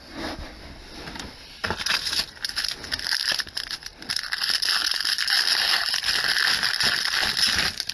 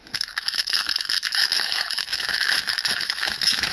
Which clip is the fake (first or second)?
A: second